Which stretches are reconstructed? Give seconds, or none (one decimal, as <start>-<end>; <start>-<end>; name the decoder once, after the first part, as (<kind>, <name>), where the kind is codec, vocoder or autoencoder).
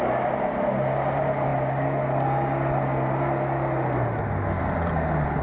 none